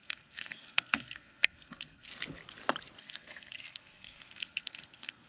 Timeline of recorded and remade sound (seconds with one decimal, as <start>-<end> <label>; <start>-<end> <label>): 0.0-2.1 remade; 2.1-3.0 recorded; 3.0-5.3 remade